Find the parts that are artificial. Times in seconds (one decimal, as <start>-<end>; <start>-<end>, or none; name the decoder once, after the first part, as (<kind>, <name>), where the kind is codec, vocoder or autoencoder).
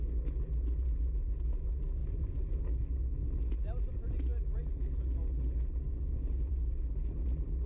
2.0-2.6 (vocoder, BigVGAN v2)